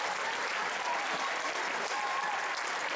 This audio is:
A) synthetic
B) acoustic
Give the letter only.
B